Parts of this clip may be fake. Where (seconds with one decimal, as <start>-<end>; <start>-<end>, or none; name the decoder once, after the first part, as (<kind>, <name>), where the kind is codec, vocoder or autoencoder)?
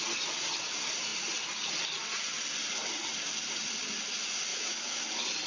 4.5-5.0 (autoencoder, DAC-VAE)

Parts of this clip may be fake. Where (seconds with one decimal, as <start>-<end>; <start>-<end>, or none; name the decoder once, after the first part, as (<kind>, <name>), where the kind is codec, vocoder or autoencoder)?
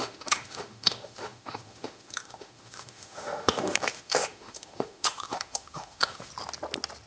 0.0-6.3 (autoencoder, DAC-VAE)